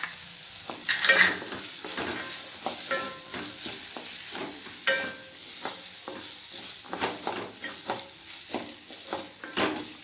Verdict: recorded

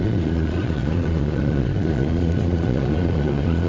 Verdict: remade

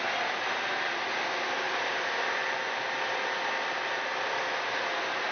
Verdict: recorded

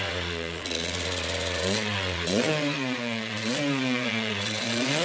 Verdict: remade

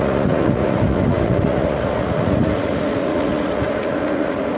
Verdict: remade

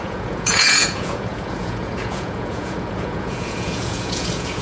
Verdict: remade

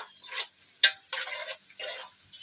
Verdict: recorded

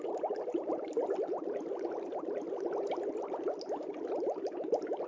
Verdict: recorded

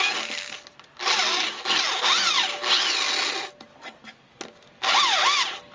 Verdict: recorded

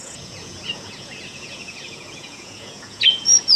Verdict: remade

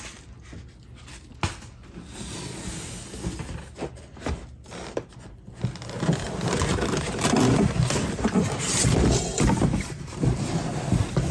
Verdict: recorded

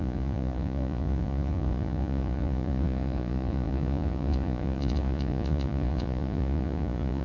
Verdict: remade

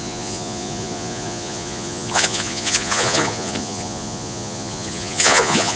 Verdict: remade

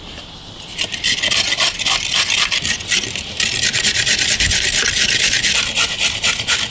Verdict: recorded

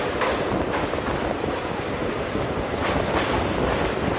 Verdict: recorded